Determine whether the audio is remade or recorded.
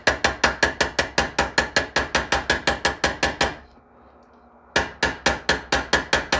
recorded